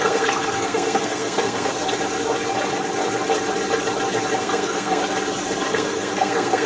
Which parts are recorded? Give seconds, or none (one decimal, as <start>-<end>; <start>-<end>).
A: 1.8-4.4; 5.0-5.7